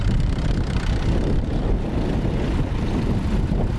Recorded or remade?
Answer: recorded